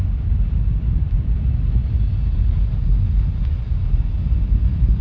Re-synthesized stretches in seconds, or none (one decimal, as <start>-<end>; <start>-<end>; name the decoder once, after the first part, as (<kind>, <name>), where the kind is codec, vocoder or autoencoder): none